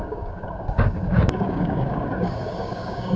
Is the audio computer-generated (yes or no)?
yes